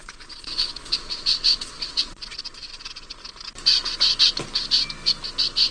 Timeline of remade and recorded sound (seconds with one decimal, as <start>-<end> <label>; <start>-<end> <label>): 0.0-3.1 remade; 3.1-5.7 recorded